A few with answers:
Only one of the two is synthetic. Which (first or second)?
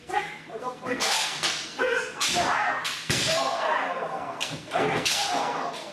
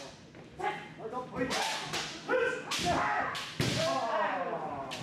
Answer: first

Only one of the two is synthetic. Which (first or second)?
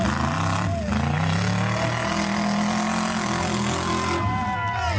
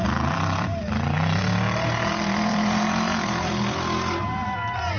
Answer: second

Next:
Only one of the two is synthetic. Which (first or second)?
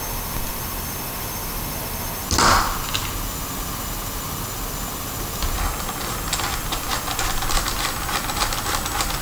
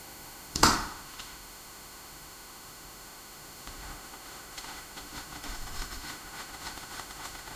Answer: second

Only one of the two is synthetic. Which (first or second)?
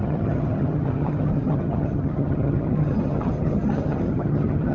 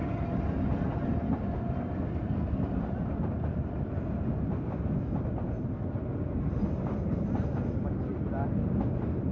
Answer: first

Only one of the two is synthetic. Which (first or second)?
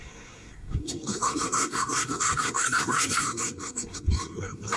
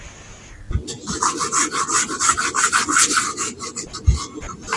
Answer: first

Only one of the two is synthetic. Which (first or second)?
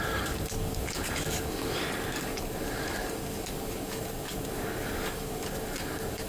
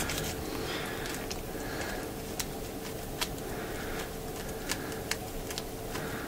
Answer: first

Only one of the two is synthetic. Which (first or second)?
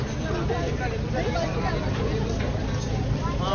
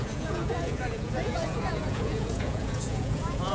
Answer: second